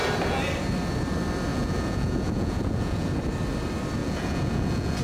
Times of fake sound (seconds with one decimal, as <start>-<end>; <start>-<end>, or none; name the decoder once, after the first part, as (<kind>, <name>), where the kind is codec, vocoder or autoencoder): 1.5-3.1 (vocoder, Vocos); 4.0-5.0